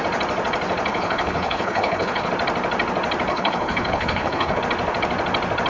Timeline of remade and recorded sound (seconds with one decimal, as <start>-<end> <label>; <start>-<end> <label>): 0.0-0.9 recorded; 0.9-2.3 remade; 2.3-3.3 recorded; 3.3-4.6 remade; 4.6-5.7 recorded